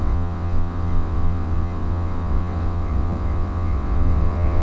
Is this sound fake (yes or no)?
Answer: yes